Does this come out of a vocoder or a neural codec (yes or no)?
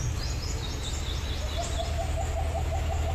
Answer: no